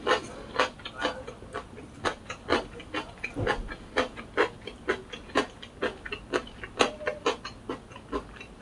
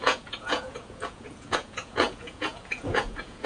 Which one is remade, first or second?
second